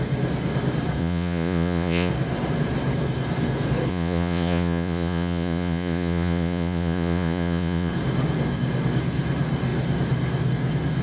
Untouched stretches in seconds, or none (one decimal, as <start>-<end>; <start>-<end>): 0.0-1.0; 2.1-3.9; 7.9-11.0